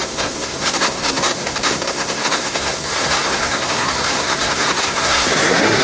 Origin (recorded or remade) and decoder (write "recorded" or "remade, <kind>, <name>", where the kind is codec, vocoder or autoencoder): remade, codec, SNAC